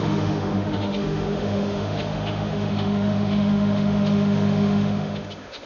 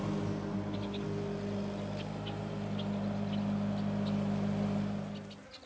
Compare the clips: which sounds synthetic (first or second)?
first